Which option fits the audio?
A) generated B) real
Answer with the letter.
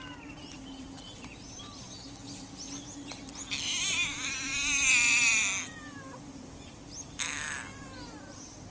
B